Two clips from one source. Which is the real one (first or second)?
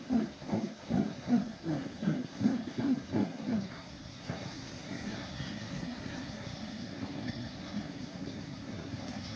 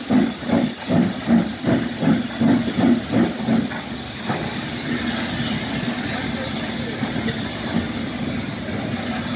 second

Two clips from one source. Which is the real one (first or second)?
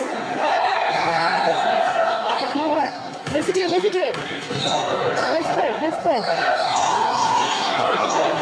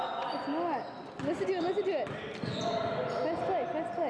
second